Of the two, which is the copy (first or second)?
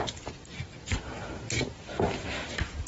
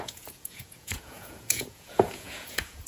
second